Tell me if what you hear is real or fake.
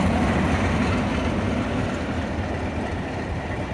real